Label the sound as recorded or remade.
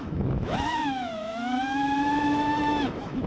remade